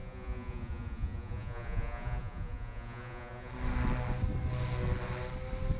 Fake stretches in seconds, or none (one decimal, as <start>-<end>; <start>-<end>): 0.0-3.5